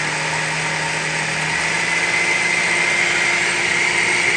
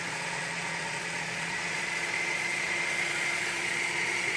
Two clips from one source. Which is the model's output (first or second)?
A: second